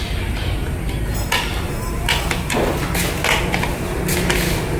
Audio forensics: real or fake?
real